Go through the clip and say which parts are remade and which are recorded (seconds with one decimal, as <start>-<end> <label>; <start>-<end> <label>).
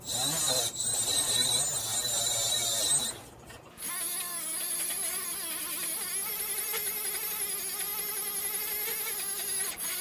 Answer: 0.0-10.0 recorded